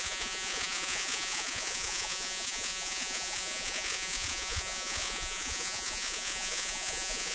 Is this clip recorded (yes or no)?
no